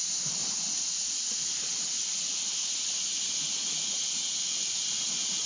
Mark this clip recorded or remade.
recorded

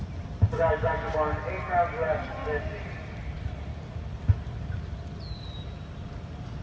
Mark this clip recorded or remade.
recorded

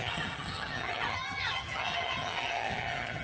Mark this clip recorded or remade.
remade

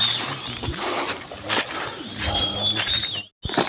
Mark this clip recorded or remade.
recorded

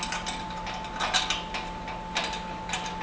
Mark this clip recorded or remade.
recorded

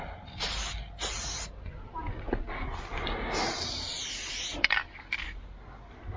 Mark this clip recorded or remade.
recorded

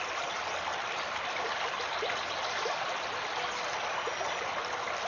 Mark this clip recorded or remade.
recorded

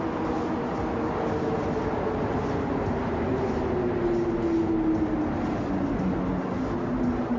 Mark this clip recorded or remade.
recorded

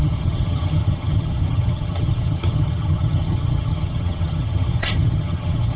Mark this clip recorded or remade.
remade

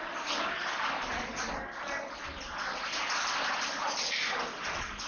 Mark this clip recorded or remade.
recorded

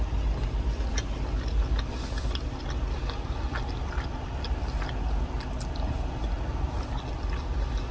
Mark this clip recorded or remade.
recorded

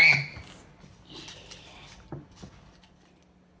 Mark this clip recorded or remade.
recorded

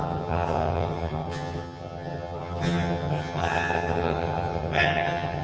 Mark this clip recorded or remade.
remade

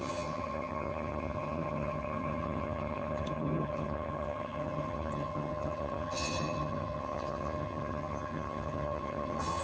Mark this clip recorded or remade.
remade